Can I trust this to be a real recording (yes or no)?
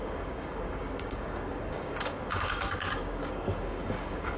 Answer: no